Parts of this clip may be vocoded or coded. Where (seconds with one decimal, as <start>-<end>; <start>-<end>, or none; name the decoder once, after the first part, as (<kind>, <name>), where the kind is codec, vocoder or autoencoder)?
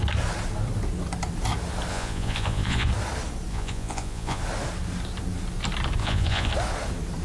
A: 1.9-2.9 (vocoder, Vocos); 3.5-4.4; 6.0-6.5